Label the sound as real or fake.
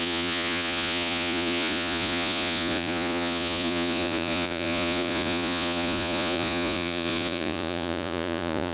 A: fake